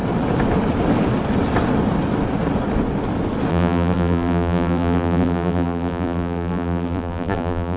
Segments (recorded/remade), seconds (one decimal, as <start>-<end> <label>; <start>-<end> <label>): 0.0-3.5 recorded; 3.5-7.8 remade